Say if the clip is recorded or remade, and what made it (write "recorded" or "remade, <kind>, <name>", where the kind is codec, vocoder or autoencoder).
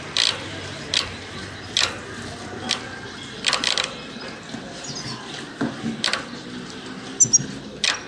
recorded